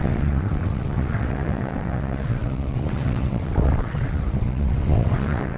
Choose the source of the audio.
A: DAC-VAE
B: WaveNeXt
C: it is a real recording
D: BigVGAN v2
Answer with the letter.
B